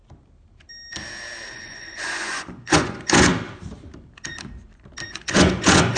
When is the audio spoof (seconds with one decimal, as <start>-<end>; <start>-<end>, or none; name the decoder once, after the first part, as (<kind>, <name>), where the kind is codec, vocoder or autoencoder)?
1.5-3.3 (vocoder, Vocos); 5.1-6.0

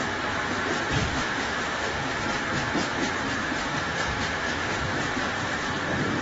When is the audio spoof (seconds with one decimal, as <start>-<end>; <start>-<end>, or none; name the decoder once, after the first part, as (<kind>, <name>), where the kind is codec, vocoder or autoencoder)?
1.0-2.2 (autoencoder, DAC-VAE); 3.4-4.7